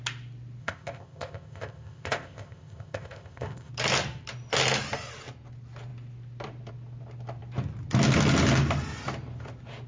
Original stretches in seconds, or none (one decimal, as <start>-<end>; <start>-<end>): 0.0-0.6; 3.7-9.9